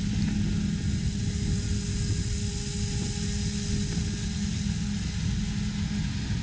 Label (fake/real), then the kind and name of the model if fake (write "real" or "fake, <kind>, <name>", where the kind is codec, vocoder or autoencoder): real